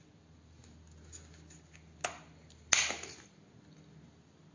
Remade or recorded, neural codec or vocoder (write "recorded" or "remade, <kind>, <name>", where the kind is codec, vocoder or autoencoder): recorded